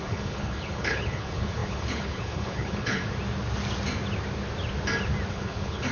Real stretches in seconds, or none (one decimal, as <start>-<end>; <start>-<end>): 3.0-5.3